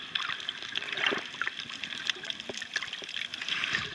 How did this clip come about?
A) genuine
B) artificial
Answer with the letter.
A